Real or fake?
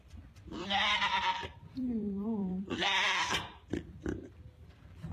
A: fake